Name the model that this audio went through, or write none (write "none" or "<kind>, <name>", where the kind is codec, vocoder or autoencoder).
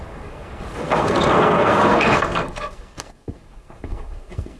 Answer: codec, SNAC